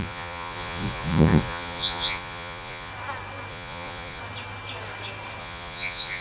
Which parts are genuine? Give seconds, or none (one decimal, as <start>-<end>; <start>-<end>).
2.9-3.5; 4.2-5.4